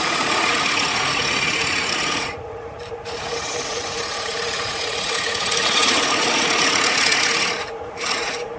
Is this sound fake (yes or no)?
yes